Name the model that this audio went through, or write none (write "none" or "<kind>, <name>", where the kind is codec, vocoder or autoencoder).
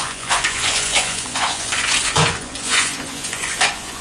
vocoder, Vocos